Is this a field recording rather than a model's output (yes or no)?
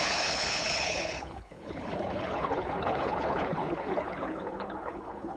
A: no